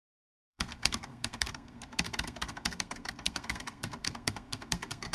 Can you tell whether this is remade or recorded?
remade